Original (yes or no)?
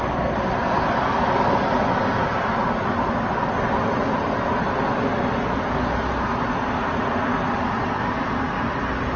yes